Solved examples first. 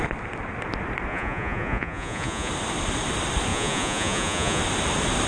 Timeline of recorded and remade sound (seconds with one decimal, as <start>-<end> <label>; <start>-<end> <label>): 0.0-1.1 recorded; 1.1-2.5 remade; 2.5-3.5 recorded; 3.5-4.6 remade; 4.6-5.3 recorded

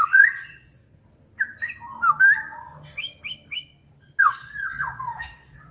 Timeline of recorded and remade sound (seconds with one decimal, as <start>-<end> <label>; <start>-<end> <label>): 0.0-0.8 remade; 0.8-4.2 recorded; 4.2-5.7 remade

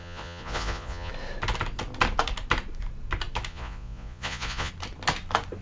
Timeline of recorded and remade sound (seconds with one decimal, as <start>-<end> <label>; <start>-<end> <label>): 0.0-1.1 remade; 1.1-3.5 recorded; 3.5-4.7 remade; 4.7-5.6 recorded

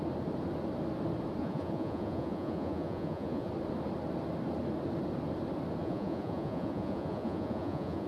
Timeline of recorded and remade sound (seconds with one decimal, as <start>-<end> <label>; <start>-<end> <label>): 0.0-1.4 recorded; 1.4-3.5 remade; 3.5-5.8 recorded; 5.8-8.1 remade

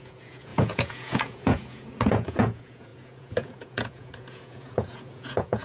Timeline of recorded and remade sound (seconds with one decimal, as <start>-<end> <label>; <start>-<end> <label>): 0.0-5.6 remade

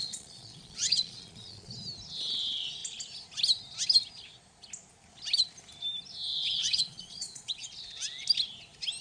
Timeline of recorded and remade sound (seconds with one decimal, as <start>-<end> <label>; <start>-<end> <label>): 0.0-1.7 remade; 1.7-6.3 recorded; 6.3-7.7 remade; 7.7-9.0 recorded